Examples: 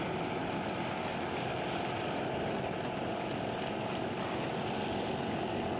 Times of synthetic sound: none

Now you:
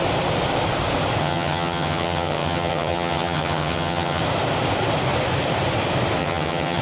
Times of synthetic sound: 1.2-4.2 (vocoder, HiFi-GAN); 6.2-6.8